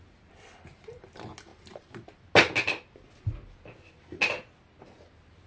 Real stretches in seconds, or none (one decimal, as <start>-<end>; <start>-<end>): 0.0-5.5